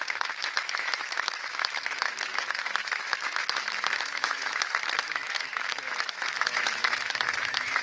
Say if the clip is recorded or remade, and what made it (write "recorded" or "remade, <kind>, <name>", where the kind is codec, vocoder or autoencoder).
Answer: remade, autoencoder, DAC-VAE